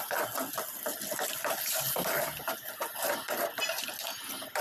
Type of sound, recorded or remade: recorded